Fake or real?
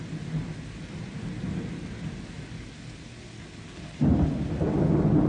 real